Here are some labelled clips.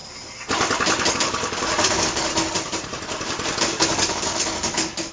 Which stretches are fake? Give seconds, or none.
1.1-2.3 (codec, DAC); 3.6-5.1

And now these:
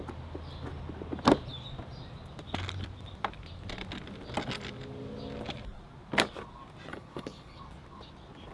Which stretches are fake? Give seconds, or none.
6.9-7.6 (codec, HILCodec)

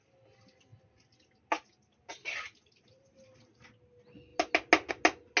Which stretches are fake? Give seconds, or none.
none

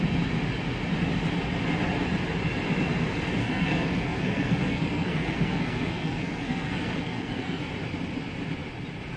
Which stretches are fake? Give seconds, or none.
3.4-7.6 (codec, SNAC)

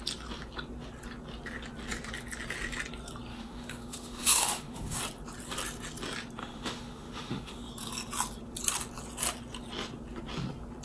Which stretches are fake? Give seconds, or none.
3.3-5.0 (autoencoder, DAC-VAE); 6.4-7.7